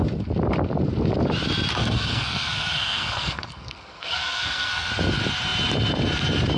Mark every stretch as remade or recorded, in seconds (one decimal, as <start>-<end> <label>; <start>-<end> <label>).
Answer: 0.0-1.7 recorded; 1.7-4.9 remade; 4.9-6.6 recorded